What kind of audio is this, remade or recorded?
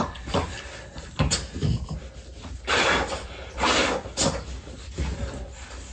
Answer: recorded